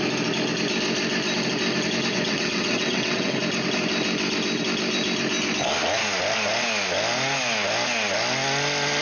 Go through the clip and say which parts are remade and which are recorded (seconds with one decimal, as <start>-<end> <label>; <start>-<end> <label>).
0.0-2.1 recorded; 2.1-3.4 remade; 3.4-9.0 recorded